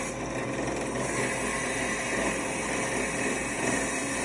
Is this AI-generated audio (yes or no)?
no